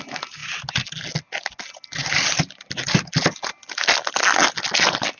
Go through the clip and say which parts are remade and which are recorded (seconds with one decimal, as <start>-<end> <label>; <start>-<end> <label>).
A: 0.0-5.2 recorded